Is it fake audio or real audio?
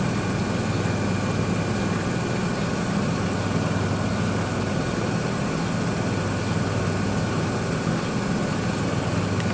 real